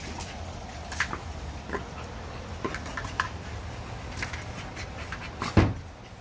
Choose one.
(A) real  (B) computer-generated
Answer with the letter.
A